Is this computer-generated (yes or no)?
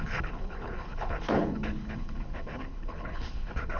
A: yes